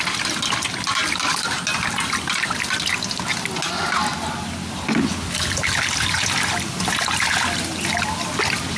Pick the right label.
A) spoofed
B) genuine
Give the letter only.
B